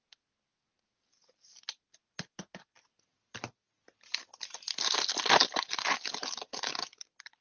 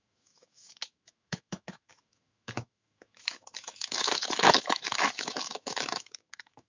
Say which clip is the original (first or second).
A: first